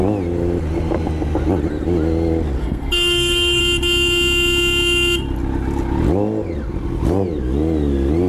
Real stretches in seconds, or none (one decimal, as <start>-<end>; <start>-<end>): 0.0-2.6; 3.6-8.3

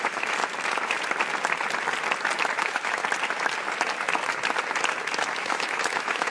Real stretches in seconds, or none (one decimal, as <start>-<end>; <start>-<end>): 0.4-2.6; 3.0-5.3